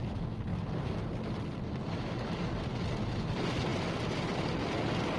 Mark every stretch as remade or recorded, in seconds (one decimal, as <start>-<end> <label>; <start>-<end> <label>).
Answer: 0.0-5.2 recorded